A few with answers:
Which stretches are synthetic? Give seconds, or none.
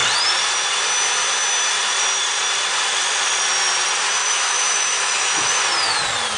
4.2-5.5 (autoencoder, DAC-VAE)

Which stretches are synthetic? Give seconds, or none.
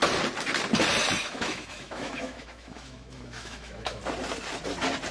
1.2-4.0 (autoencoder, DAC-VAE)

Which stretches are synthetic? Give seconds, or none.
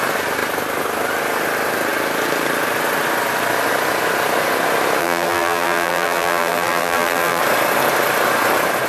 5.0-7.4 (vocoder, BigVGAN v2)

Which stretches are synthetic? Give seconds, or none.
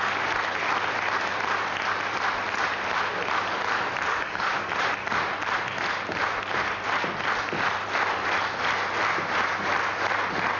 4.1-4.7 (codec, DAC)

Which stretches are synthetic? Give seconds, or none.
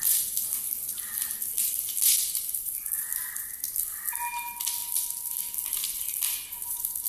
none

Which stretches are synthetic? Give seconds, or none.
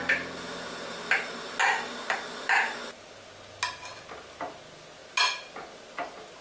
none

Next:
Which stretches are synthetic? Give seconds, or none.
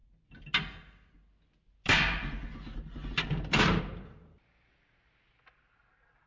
none